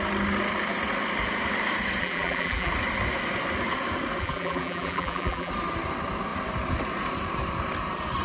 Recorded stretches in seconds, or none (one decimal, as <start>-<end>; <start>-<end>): 0.0-2.0; 2.7-4.2; 5.5-8.2